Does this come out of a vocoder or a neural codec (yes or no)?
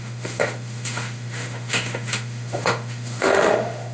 yes